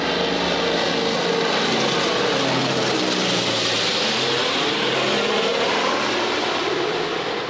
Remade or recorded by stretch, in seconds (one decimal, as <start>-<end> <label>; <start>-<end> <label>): 0.0-2.6 recorded; 2.6-5.8 remade; 5.8-7.5 recorded